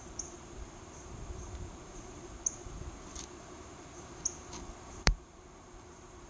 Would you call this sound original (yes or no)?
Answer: no